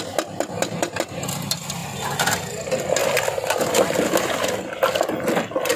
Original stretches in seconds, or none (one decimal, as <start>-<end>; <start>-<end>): 0.0-5.8